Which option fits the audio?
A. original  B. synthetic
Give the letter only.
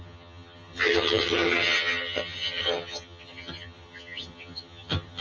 B